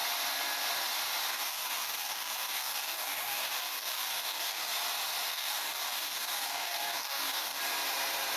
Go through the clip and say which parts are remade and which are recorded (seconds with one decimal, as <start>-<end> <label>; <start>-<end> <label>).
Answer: 0.0-1.3 recorded; 1.3-4.7 remade; 4.7-5.3 recorded; 5.3-7.6 remade; 7.6-8.4 recorded